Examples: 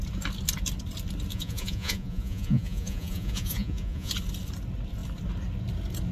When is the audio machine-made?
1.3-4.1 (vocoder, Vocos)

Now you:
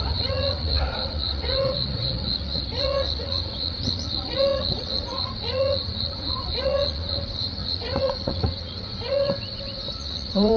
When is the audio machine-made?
0.0-10.6 (vocoder, Vocos)

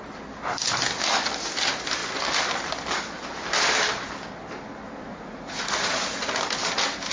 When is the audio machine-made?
5.1-6.3 (vocoder, Vocos)

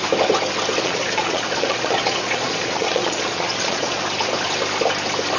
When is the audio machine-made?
0.8-4.0 (vocoder, Vocos)